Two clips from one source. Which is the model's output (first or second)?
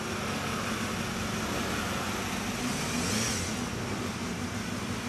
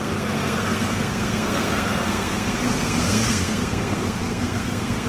second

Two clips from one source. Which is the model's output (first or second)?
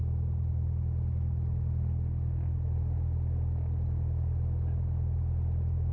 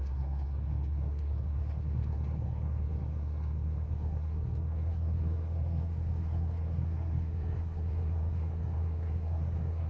second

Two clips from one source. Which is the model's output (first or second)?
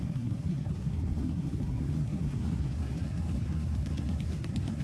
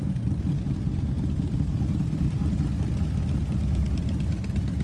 first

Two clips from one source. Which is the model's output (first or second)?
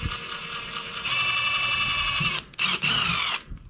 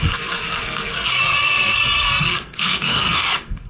second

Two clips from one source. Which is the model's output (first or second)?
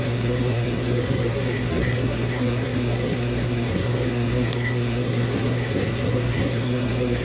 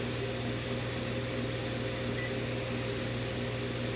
first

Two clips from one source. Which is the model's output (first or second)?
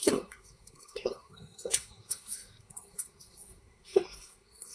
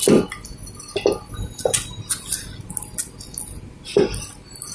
first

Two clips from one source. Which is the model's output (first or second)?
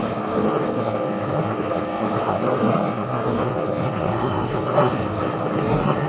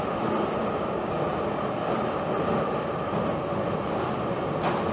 first